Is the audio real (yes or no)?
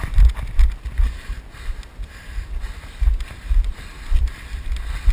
yes